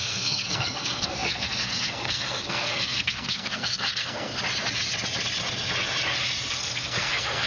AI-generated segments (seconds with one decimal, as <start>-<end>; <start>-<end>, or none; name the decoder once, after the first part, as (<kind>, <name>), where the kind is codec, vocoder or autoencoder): 0.0-4.3 (codec, SNAC); 6.5-7.5

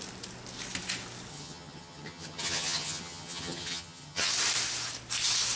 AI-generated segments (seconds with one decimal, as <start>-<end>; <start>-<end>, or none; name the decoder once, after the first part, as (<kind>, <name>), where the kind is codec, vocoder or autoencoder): 1.3-4.3 (vocoder, HiFi-GAN)

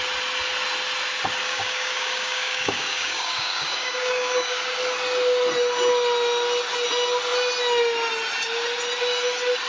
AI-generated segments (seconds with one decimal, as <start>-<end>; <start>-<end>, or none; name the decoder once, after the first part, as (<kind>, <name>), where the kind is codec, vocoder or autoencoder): 1.4-4.6 (codec, DAC)

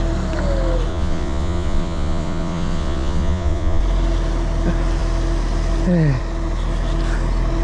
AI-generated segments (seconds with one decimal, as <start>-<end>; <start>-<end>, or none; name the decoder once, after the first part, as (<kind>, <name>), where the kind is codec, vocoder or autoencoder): 0.9-3.8 (vocoder, Vocos)

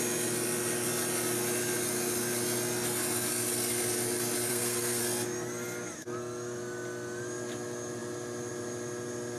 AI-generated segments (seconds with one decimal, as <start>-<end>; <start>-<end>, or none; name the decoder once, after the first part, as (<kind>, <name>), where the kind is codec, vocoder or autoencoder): 4.5-5.0 (codec, SNAC)

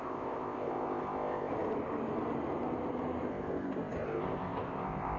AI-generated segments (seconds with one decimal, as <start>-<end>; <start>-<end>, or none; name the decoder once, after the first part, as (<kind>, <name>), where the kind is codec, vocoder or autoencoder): 0.0-1.5 (codec, ZipCodec); 3.3-5.2

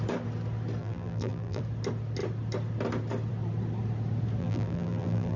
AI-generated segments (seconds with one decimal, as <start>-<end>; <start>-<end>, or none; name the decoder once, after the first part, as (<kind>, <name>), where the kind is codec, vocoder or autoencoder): 0.8-1.6 (vocoder, BigVGAN v2); 4.4-5.4

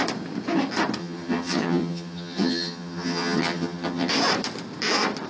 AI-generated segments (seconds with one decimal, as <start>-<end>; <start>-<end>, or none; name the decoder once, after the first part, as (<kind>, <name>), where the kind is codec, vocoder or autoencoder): 1.0-4.1 (vocoder, HiFi-GAN)